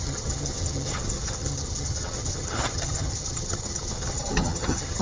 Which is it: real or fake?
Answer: fake